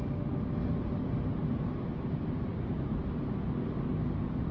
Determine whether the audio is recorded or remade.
recorded